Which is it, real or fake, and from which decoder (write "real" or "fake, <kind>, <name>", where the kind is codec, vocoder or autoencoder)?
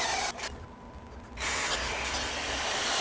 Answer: real